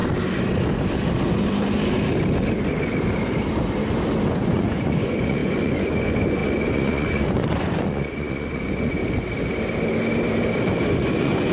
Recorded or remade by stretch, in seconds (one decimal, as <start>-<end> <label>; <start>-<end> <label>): 0.0-4.3 recorded; 4.3-9.0 remade; 9.0-10.9 recorded; 10.9-11.5 remade